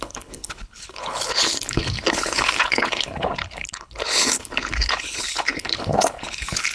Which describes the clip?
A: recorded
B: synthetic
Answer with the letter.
B